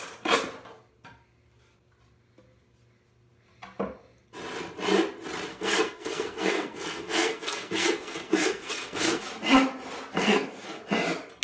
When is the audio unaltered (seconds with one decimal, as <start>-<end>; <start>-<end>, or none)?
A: 0.0-5.5; 9.3-10.2; 10.8-11.4